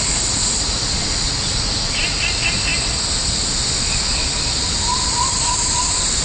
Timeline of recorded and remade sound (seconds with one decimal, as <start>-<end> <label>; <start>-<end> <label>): 0.0-2.7 remade; 2.7-6.2 recorded